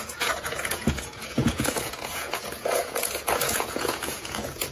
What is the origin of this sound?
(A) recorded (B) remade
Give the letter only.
B